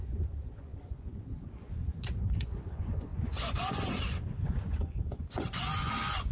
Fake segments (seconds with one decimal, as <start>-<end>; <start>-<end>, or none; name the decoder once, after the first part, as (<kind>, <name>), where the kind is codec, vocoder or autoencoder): 0.0-6.3 (vocoder, Vocos)